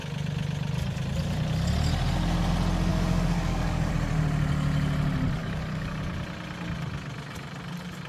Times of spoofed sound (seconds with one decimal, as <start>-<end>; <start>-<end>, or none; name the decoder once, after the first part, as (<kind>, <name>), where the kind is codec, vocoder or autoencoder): 2.9-3.9 (codec, DAC); 5.4-6.0